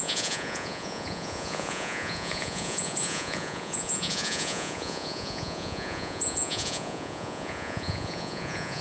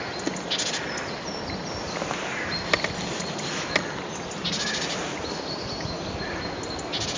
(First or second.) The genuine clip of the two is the second